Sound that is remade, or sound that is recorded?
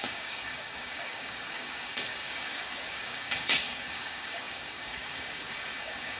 remade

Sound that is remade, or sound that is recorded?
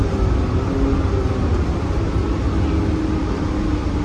recorded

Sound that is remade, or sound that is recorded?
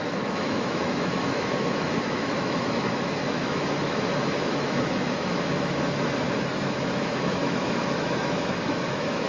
remade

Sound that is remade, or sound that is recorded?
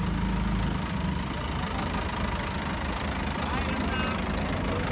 recorded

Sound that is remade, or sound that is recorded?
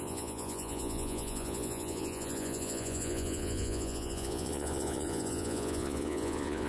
remade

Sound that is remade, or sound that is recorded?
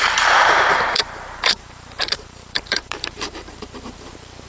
remade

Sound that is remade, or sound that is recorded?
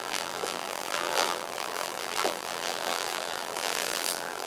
remade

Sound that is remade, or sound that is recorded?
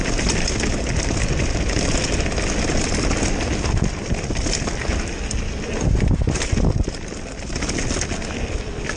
recorded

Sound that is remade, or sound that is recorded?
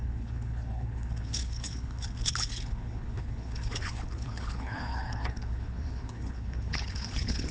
remade